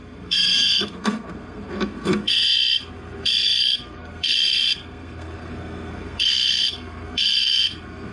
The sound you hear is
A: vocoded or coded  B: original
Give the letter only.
A